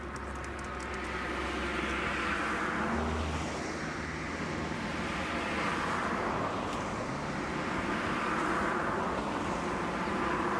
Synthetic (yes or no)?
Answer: no